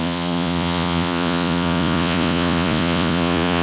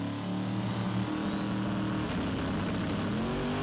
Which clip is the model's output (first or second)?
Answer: first